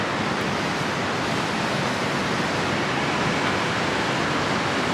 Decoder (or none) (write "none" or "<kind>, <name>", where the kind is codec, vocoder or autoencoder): none